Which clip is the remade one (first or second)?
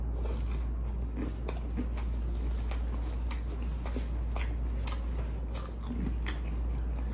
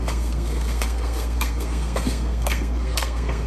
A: second